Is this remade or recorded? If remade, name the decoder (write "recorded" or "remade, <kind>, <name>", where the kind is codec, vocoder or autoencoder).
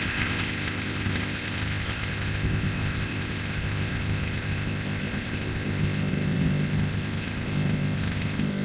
remade, codec, ZipCodec